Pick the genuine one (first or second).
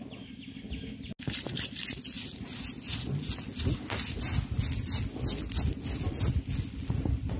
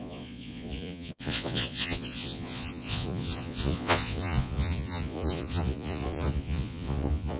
first